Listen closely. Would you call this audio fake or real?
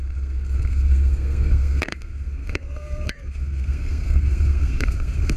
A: fake